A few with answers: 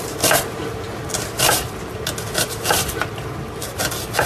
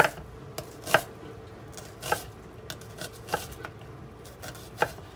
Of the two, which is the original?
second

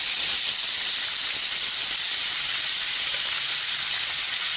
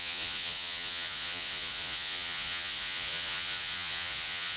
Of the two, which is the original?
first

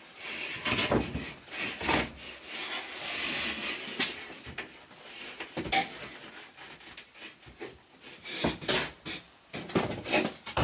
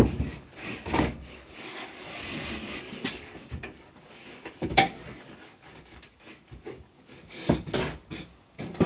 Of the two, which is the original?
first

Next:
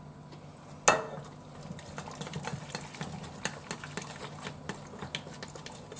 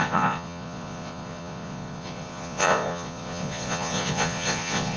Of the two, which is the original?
first